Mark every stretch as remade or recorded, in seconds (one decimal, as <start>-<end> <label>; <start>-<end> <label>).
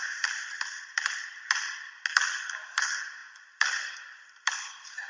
0.0-5.1 recorded